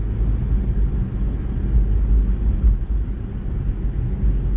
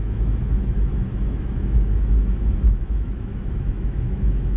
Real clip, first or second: first